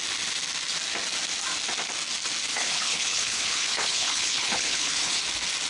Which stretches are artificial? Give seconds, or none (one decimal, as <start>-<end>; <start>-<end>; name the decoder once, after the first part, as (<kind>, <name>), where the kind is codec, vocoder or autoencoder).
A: 2.5-5.2 (codec, HILCodec)